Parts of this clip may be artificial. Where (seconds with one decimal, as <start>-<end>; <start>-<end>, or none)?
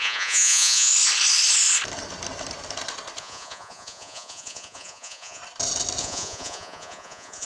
0.0-0.9; 3.2-5.4; 6.0-7.5